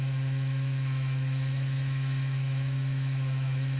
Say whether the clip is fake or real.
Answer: fake